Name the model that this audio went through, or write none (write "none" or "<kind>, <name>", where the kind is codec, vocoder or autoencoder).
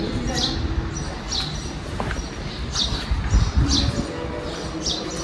none